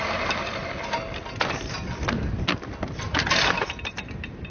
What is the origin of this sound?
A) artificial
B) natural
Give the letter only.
B